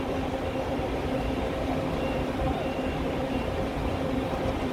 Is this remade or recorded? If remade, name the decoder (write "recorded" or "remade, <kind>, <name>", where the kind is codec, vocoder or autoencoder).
remade, vocoder, BigVGAN v2